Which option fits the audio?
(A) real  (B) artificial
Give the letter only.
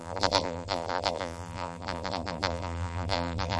B